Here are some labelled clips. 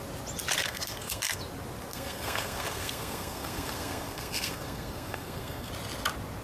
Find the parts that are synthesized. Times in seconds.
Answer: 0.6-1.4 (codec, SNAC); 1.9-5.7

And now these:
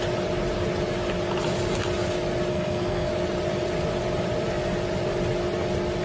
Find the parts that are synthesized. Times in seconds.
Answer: 2.5-3.1 (codec, SNAC)

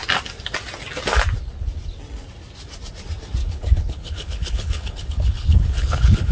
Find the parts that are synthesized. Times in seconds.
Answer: 3.4-6.3 (codec, HILCodec)